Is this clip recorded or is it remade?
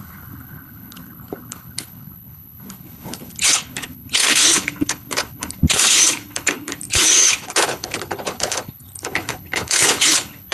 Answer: remade